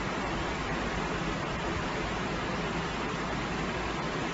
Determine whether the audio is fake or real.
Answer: real